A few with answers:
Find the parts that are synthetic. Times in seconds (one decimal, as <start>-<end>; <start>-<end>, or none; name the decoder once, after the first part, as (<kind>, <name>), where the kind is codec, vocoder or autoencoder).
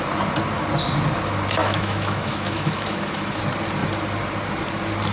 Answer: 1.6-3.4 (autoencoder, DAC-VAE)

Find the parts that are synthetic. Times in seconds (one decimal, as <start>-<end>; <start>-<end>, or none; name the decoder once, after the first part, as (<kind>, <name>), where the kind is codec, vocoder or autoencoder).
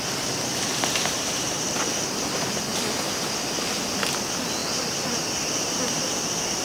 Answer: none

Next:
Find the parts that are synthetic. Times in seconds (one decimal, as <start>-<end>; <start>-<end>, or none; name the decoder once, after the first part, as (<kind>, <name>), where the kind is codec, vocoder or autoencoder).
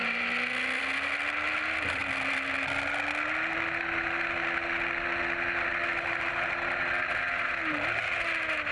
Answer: none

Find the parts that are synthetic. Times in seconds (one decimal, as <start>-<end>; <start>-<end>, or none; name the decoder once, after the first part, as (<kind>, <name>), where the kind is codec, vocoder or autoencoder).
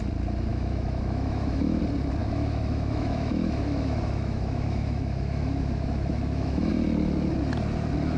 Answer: 0.5-1.8 (autoencoder, DAC-VAE); 2.2-6.7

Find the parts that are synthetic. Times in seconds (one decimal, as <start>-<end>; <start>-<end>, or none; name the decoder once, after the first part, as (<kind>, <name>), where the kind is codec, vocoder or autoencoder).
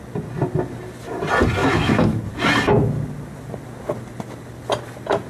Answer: 1.6-2.2 (autoencoder, DAC-VAE)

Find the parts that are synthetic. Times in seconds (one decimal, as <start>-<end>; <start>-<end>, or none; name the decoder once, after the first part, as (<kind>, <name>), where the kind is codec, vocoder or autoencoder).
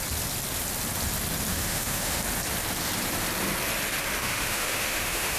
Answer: 1.5-2.2 (autoencoder, DAC-VAE); 4.2-5.4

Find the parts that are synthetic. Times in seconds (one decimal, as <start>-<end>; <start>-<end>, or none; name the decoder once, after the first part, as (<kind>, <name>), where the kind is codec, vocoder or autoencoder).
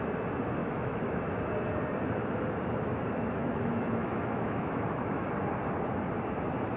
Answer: 0.6-1.4 (autoencoder, DAC-VAE); 3.2-5.3